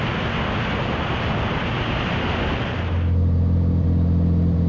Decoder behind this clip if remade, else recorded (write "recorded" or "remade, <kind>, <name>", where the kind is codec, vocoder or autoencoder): recorded